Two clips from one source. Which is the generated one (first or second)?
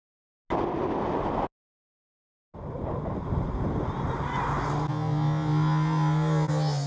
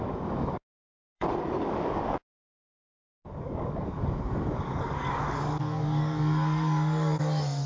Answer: second